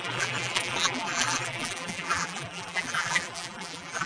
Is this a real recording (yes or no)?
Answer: no